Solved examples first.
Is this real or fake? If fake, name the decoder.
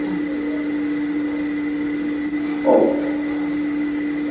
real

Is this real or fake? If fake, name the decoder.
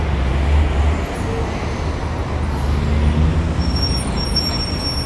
real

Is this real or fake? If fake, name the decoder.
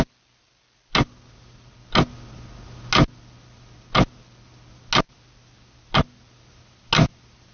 real